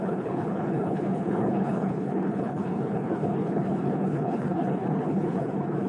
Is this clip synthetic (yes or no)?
yes